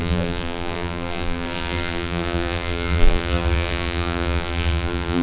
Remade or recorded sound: remade